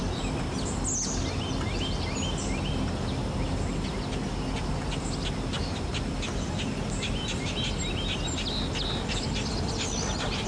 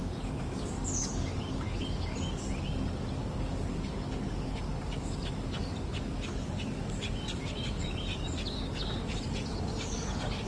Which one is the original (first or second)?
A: first